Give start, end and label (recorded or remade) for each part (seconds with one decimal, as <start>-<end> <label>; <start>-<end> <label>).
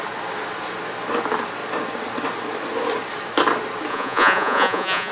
0.0-3.9 recorded; 3.9-5.1 remade